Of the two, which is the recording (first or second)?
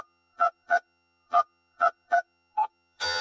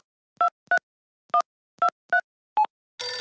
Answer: second